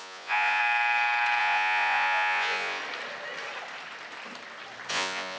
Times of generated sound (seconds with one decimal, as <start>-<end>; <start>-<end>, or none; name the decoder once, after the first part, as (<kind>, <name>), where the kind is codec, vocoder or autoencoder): 0.0-0.6 (vocoder, Vocos); 1.4-2.8; 4.9-5.4